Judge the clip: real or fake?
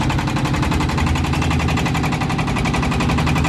real